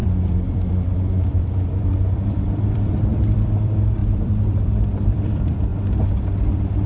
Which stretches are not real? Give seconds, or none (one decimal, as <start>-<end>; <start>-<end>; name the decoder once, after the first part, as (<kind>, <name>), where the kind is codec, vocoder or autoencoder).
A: 0.0-5.7 (vocoder, BigVGAN v2); 6.5-6.9